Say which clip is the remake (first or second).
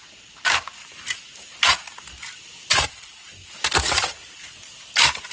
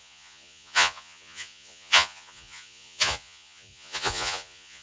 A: second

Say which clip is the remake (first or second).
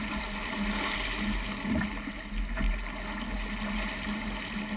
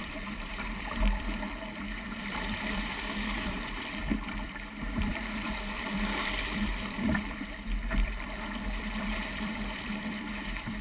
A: second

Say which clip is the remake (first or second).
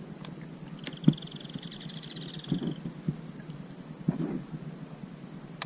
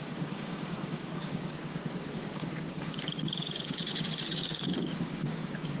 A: second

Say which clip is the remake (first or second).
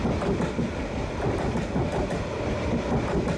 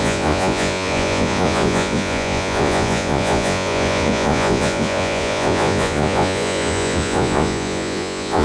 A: second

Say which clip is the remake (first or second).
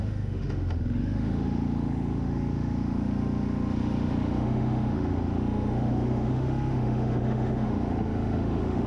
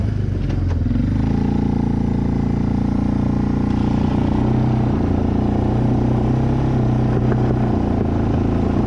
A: first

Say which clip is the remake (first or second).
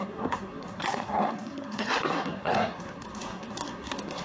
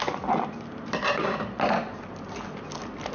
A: first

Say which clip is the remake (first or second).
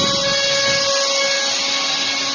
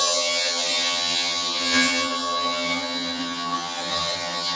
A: second